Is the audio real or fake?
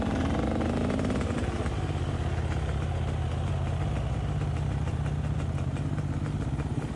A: real